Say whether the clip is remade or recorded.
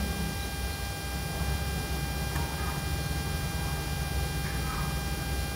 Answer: recorded